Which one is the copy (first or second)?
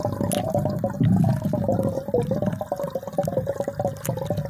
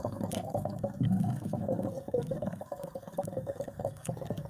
second